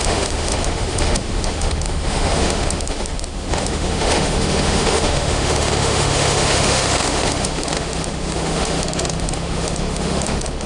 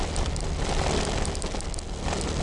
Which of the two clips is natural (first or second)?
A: second